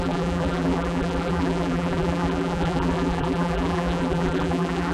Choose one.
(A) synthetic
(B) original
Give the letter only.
A